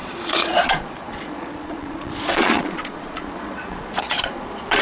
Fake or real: fake